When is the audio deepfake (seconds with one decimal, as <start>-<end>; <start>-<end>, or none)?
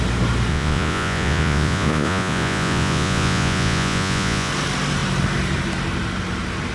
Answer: 0.5-4.5